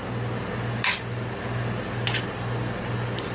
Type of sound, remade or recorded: recorded